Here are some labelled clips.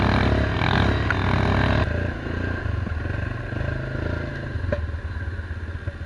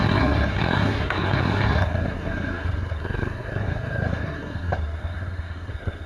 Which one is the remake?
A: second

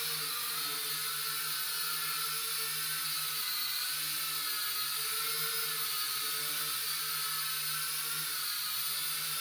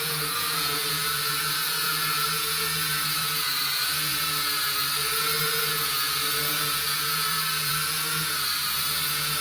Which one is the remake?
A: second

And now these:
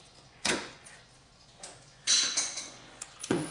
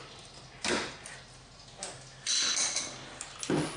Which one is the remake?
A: first